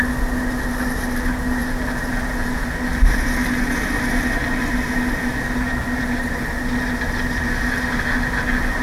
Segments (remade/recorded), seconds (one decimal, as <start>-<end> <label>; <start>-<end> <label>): 0.0-8.8 recorded